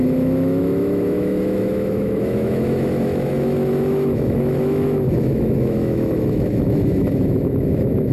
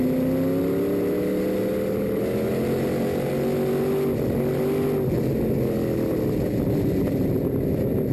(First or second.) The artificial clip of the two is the first